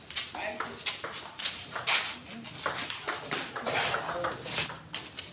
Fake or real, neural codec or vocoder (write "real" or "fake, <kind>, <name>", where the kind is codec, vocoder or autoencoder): real